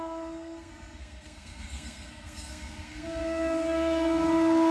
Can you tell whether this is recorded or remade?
remade